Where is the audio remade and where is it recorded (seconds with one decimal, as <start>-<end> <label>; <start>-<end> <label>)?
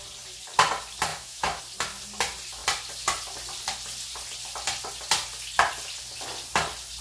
0.0-1.1 recorded; 1.1-1.6 remade; 1.6-7.0 recorded